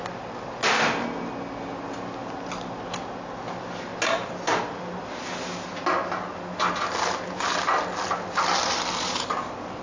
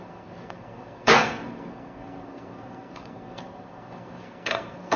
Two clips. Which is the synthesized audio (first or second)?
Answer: second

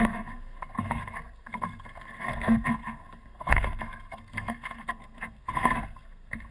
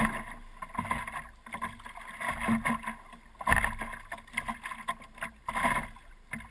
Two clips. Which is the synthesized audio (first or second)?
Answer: first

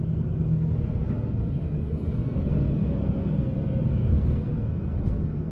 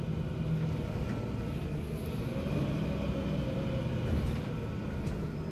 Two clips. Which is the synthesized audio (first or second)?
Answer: first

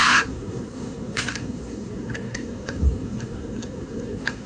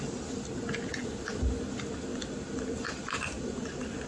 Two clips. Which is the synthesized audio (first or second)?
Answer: first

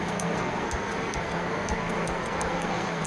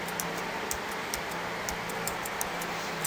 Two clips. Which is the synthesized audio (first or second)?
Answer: first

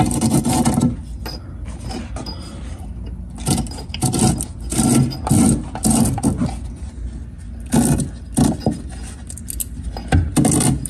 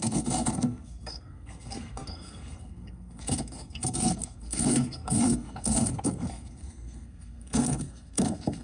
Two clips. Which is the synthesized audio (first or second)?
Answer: second